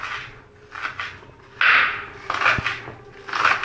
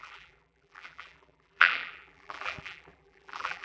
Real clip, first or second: first